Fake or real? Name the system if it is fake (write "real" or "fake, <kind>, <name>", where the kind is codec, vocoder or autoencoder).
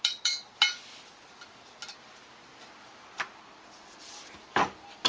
real